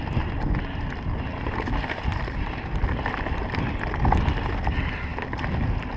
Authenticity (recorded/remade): recorded